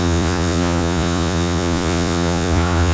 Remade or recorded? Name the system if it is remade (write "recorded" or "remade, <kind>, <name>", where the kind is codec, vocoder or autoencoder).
remade, vocoder, Vocos